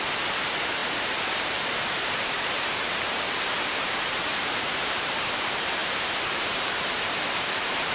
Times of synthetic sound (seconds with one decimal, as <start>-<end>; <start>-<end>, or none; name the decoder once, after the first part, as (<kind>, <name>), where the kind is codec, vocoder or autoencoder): 0.0-7.9 (vocoder, BigVGAN v2)